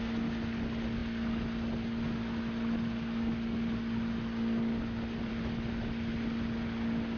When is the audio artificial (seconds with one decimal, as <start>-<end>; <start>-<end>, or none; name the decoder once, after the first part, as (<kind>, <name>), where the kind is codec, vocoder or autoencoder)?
none